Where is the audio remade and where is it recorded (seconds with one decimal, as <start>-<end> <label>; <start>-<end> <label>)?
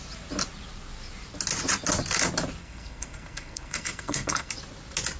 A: 0.0-2.6 recorded; 2.6-4.5 remade; 4.5-5.2 recorded